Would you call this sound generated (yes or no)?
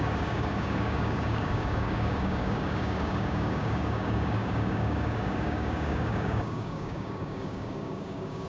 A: yes